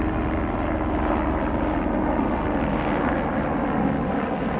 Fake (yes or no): no